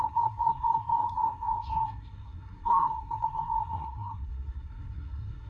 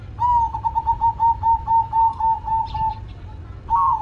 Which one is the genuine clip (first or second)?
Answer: second